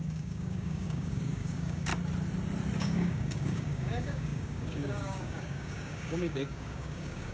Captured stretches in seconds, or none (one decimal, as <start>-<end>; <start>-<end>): 1.9-2.8